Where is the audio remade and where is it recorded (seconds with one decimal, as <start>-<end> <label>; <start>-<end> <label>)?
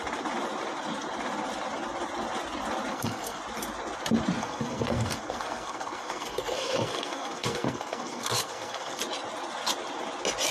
0.0-2.9 recorded; 2.9-3.4 remade; 3.4-4.4 recorded; 4.4-9.0 remade; 9.0-10.5 recorded